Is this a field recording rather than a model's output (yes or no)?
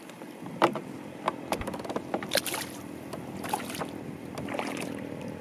yes